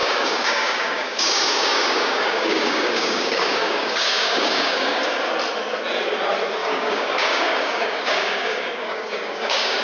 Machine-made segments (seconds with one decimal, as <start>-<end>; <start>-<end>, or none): 0.0-5.0; 6.6-9.8